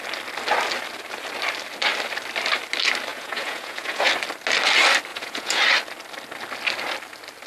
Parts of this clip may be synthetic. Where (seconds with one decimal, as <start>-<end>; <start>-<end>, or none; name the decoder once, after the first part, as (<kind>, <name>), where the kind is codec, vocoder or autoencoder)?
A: 3.1-4.1 (vocoder, Vocos); 5.1-5.6